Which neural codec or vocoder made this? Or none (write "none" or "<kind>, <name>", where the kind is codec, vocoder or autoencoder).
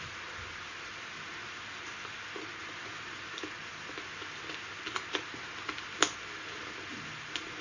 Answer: none